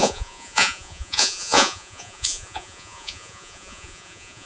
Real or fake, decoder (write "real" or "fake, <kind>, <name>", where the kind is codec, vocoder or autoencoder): fake, vocoder, Vocos